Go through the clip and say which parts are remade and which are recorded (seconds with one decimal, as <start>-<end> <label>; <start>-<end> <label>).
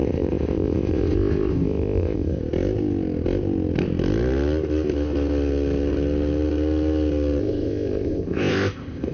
0.0-2.4 remade; 2.4-7.4 recorded; 7.4-9.1 remade